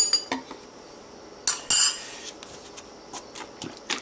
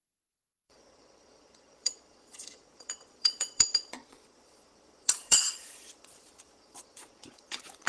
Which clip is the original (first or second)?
first